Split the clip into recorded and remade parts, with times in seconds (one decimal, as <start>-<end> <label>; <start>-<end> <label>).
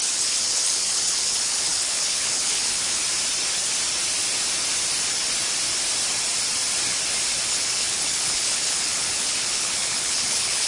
0.0-3.0 remade; 3.0-7.5 recorded; 7.5-10.7 remade